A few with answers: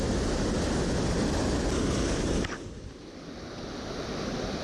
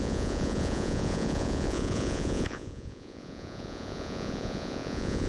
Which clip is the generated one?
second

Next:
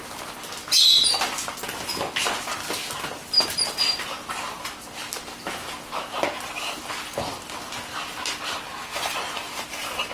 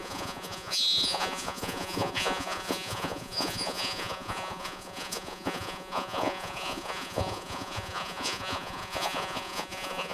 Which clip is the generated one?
second